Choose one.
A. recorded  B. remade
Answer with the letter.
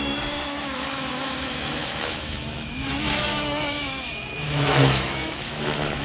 B